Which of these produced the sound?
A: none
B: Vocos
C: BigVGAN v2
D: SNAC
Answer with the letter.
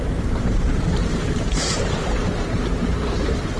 C